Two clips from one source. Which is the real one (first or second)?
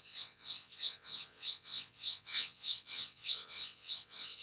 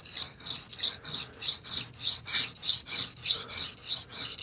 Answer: second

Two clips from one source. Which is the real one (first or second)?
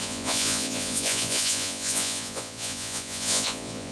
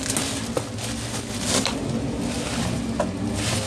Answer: second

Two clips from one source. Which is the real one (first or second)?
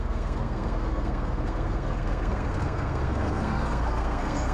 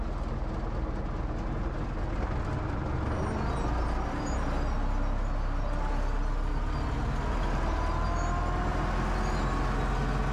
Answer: second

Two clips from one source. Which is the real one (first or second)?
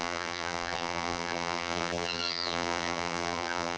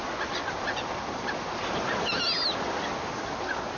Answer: second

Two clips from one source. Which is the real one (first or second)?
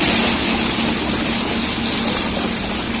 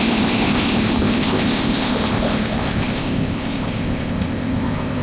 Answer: first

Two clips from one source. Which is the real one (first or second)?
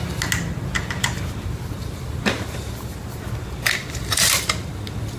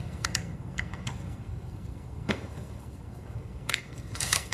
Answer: first